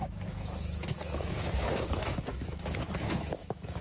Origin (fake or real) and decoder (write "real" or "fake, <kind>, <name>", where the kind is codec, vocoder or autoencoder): fake, autoencoder, DAC-VAE